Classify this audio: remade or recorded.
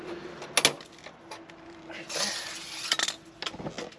recorded